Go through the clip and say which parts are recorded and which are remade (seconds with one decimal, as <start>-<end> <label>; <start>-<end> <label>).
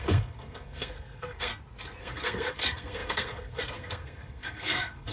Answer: 0.0-1.5 remade; 1.5-2.0 recorded; 2.0-5.1 remade